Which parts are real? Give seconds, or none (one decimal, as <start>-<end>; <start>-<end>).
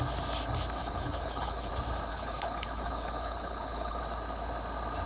0.0-0.8; 1.7-2.1; 4.0-5.1